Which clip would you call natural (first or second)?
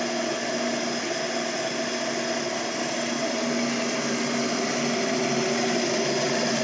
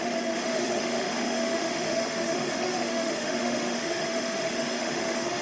first